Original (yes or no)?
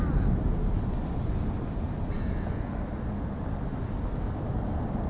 yes